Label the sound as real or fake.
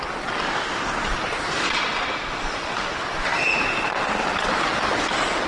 real